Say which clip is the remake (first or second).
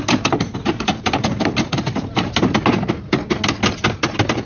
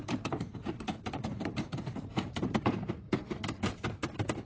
second